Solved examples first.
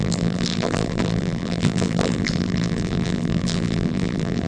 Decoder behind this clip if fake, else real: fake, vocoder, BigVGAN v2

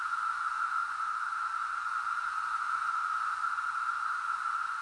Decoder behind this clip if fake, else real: fake, vocoder, Vocos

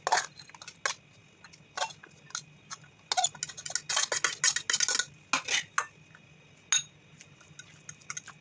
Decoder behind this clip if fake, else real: real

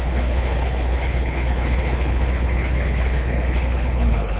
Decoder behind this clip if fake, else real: fake, codec, HILCodec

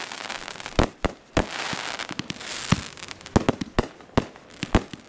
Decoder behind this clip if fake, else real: real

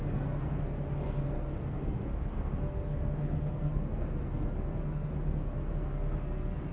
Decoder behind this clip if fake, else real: fake, codec, SNAC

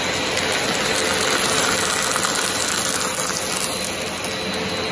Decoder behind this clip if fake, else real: real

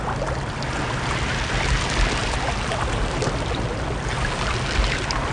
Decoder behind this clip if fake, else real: real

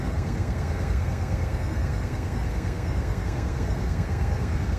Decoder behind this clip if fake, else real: fake, codec, SNAC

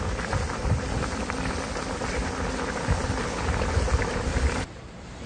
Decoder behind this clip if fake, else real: real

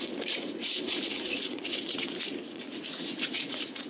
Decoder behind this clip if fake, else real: fake, vocoder, Vocos